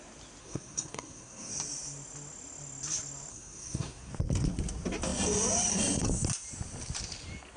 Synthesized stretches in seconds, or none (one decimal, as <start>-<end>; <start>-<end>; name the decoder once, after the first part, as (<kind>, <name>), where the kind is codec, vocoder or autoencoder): 0.4-1.5 (codec, SNAC); 3.3-4.1